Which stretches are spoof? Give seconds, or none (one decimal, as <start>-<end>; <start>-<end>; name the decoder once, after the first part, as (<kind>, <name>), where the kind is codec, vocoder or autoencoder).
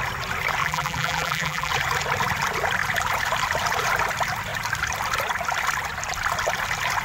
0.6-1.7 (vocoder, BigVGAN v2)